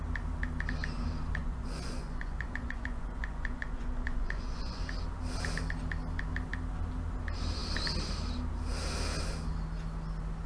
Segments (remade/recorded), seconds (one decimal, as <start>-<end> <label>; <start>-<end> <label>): 0.0-1.4 recorded; 1.4-4.8 remade; 4.8-10.5 recorded